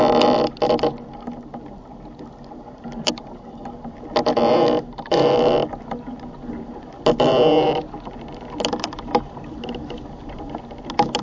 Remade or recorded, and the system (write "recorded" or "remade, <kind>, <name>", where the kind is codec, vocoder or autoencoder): recorded